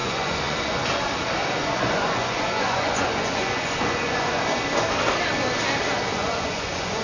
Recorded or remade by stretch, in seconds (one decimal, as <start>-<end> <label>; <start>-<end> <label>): 0.0-0.8 remade; 0.8-1.6 recorded; 1.6-4.4 remade; 4.4-6.1 recorded; 6.1-7.0 remade